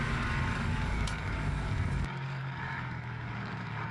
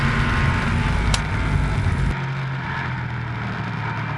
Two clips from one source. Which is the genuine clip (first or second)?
second